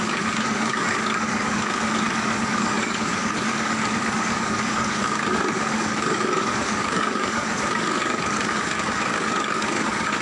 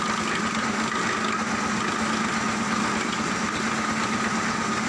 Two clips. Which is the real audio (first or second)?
second